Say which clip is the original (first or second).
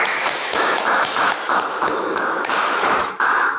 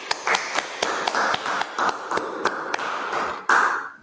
second